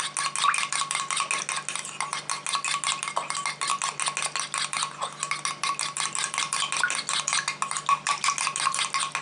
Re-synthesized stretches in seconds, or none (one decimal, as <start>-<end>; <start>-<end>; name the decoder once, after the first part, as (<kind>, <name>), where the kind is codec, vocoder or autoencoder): none